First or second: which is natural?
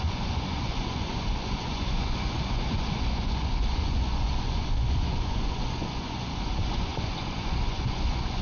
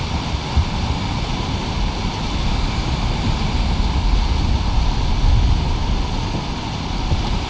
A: second